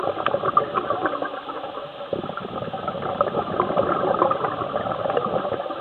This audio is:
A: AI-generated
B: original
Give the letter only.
B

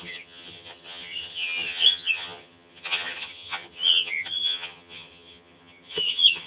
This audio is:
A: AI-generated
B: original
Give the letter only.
A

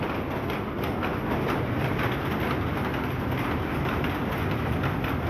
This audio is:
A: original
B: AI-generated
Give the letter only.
A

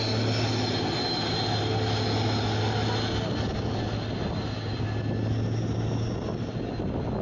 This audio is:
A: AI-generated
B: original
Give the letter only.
B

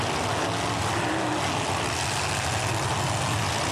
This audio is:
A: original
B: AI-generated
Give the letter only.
A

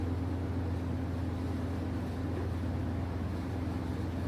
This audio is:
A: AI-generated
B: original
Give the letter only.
B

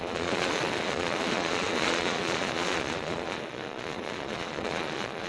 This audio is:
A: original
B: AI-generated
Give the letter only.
B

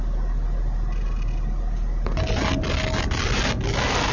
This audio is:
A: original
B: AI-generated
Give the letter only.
A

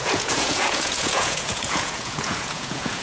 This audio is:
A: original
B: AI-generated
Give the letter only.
B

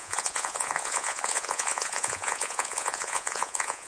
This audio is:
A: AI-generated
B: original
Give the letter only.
A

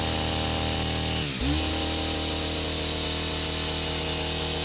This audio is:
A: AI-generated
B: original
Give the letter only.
B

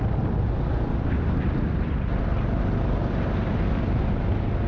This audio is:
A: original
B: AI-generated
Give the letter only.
A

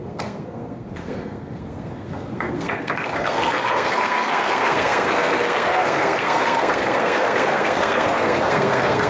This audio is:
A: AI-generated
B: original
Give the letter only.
A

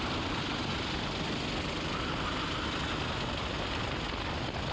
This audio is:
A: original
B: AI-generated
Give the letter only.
A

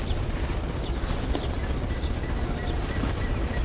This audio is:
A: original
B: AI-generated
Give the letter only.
A